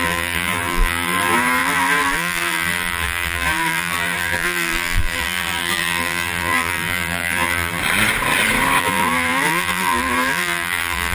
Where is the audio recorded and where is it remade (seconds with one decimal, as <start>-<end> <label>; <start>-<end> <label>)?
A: 0.0-7.8 remade; 7.8-8.8 recorded; 8.8-11.1 remade